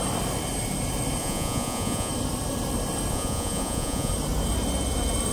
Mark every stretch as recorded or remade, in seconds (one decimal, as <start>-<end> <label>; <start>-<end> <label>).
0.0-1.2 recorded; 1.2-2.1 remade; 2.1-3.1 recorded; 3.1-4.1 remade; 4.1-5.3 recorded